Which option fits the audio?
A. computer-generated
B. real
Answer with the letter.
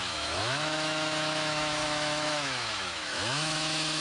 A